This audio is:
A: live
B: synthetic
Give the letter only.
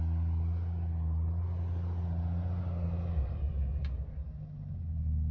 A